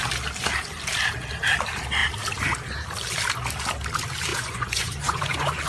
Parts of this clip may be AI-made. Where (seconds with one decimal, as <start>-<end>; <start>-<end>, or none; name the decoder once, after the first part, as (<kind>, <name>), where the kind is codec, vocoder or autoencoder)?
4.3-5.7 (vocoder, Vocos)